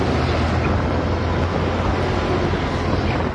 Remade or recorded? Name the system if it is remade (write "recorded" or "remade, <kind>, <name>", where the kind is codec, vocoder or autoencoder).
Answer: recorded